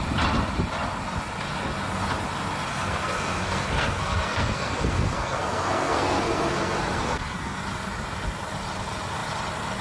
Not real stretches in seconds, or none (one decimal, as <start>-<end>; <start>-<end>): 2.7-7.6